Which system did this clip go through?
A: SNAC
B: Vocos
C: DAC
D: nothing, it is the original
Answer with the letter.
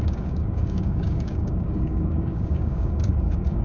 C